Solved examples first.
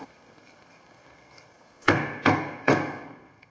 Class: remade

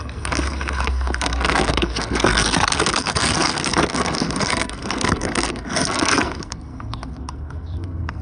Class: remade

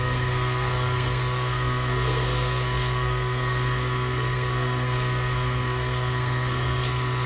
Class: remade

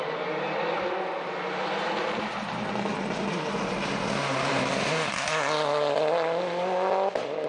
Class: recorded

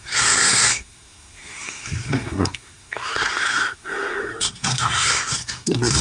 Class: remade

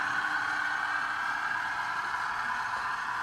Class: recorded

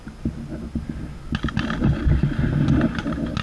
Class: recorded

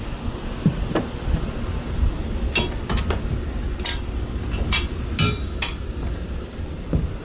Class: recorded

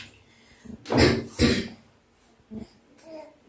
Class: recorded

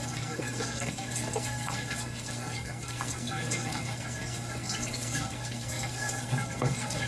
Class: remade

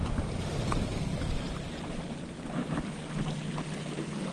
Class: recorded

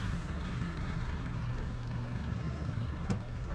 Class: remade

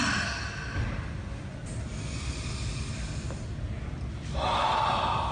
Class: recorded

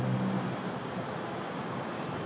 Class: recorded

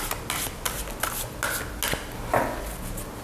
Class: recorded